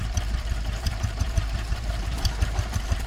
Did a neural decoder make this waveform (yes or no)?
yes